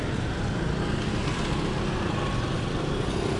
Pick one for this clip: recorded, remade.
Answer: recorded